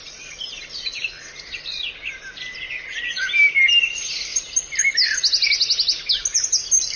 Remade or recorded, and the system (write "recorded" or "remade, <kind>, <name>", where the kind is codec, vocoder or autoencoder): recorded